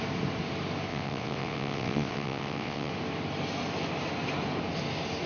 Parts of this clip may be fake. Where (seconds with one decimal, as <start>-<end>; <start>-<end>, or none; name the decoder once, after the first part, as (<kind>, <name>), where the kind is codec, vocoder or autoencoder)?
0.9-2.9 (vocoder, WaveNeXt)